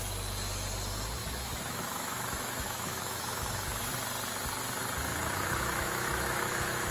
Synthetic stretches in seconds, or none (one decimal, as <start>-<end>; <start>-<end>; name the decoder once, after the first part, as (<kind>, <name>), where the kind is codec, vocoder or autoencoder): 1.2-3.9 (autoencoder, DAC-VAE); 5.1-6.9